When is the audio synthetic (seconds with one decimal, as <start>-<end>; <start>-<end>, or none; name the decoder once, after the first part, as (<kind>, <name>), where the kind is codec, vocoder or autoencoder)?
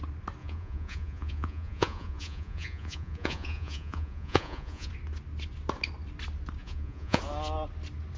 0.4-4.9 (vocoder, Vocos); 6.6-7.2